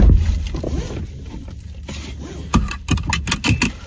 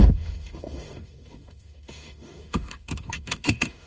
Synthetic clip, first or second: second